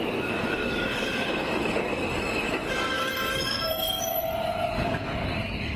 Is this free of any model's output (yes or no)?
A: no